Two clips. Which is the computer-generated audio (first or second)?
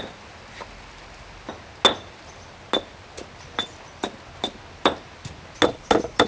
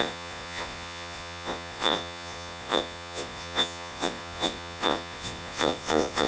second